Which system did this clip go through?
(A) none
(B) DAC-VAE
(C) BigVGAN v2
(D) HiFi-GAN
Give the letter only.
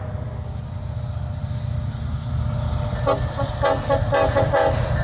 A